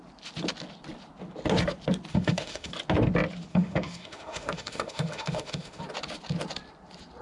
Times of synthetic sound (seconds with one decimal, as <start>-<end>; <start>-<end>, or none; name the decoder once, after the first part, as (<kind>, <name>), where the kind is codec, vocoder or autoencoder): 2.1-2.7 (autoencoder, DAC-VAE); 3.5-5.8